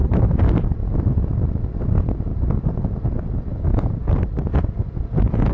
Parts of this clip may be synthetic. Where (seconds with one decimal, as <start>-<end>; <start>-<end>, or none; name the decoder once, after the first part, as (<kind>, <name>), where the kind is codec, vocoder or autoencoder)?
0.0-0.6 (vocoder, BigVGAN v2); 2.3-2.8; 3.5-4.3